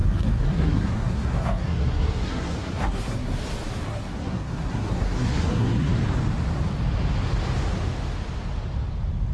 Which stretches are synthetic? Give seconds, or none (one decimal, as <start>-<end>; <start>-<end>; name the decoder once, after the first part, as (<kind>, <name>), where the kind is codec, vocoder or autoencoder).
0.0-3.4 (codec, SNAC); 3.8-5.9